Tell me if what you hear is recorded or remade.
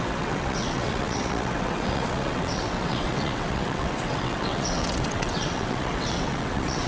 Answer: remade